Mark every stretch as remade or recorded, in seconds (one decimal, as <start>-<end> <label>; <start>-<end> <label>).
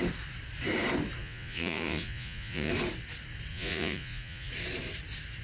0.0-1.2 recorded; 1.2-2.7 remade; 2.7-3.5 recorded; 3.5-4.5 remade; 4.5-5.4 recorded